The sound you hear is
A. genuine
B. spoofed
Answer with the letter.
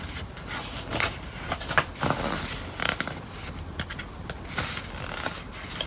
B